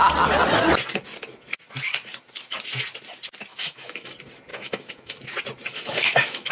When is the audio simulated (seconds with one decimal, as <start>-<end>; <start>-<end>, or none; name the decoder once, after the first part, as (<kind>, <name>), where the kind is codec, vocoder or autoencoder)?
3.5-4.1 (autoencoder, DAC-VAE); 4.5-5.2; 5.7-6.5